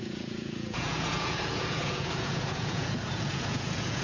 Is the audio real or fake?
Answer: fake